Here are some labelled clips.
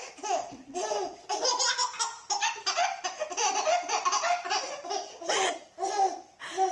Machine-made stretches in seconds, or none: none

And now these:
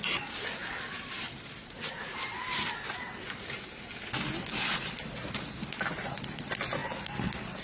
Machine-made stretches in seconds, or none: 1.6-2.2 (vocoder, Vocos)

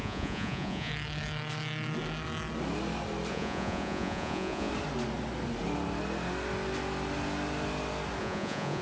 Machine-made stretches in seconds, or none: 0.0-0.9 (vocoder, Vocos); 3.3-4.7; 8.2-8.8